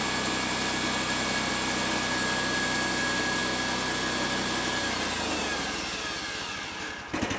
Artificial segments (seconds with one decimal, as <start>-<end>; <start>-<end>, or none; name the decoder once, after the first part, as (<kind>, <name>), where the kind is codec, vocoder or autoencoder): none